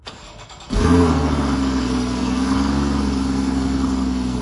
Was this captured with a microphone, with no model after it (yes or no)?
no